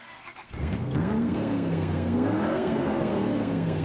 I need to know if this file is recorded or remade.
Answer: remade